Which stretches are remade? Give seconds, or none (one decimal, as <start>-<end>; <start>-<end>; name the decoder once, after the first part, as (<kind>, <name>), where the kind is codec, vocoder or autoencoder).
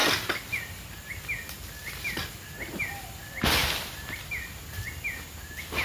3.6-4.9 (vocoder, BigVGAN v2)